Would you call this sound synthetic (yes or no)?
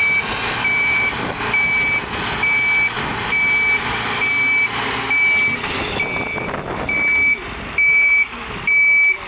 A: no